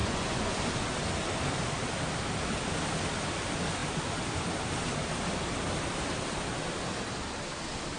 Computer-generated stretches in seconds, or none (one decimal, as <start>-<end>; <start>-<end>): 0.0-0.6